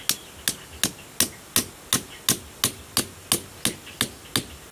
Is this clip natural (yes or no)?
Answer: yes